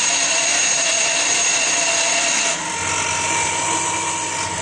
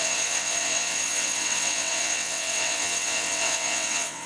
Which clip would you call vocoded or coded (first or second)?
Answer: second